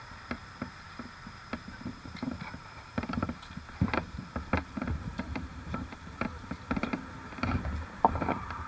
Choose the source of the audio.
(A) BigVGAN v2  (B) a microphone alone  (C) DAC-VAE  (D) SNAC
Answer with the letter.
A